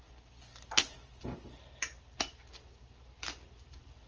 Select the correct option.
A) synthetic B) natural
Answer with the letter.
B